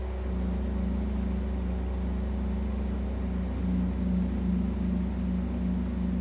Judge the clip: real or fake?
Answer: real